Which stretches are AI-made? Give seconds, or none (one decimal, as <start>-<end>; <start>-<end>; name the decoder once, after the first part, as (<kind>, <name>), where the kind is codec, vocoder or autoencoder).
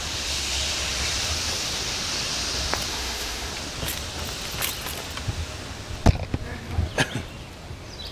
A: 2.9-3.5 (autoencoder, DAC-VAE)